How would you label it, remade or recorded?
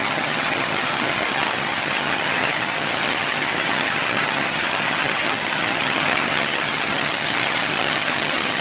remade